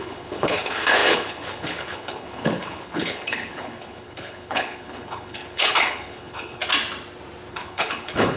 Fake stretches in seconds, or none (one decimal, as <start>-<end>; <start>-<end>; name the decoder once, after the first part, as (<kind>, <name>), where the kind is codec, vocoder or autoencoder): 0.0-6.6 (codec, HILCodec); 7.5-8.4